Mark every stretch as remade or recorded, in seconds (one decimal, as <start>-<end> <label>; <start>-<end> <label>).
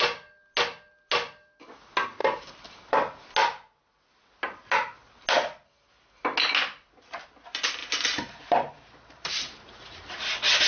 0.0-2.2 recorded; 2.2-3.3 remade; 3.3-7.8 recorded; 7.8-10.2 remade; 10.2-10.7 recorded